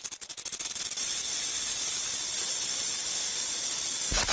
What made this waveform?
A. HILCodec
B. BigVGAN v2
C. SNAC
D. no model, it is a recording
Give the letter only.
D